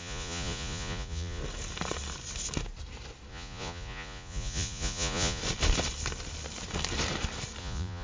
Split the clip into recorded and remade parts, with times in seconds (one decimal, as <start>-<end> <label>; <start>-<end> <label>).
0.0-1.4 remade; 1.4-3.3 recorded; 3.3-5.4 remade; 5.4-7.6 recorded; 7.6-8.0 remade

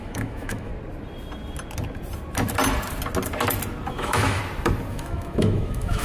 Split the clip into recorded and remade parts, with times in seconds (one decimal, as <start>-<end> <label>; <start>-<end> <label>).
0.0-0.7 remade; 0.7-3.9 recorded; 3.9-4.4 remade; 4.4-4.9 recorded; 4.9-6.0 remade